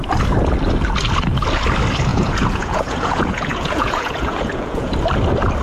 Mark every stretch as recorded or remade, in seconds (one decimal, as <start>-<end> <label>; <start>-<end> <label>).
0.0-2.1 recorded; 2.1-4.9 remade; 4.9-5.6 recorded